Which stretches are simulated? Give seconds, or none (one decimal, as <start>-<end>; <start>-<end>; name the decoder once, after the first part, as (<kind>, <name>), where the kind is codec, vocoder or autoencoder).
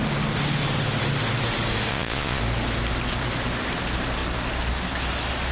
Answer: 1.9-2.4 (vocoder, Vocos)